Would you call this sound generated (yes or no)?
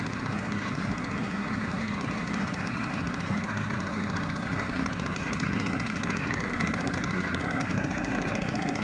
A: yes